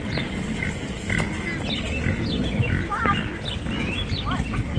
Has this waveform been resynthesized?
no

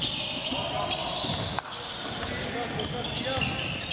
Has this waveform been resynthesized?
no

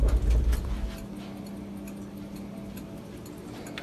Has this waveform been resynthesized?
no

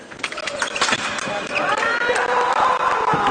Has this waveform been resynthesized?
no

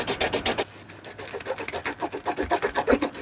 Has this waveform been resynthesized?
no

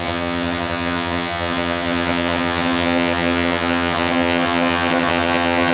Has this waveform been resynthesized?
yes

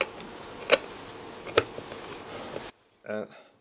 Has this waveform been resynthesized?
no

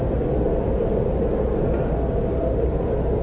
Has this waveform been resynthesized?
no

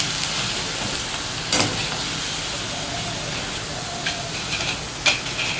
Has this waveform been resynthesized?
no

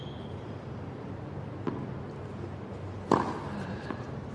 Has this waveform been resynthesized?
no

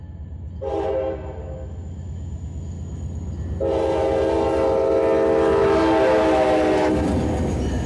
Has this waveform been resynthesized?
no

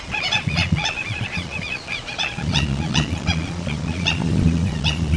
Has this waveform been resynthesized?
yes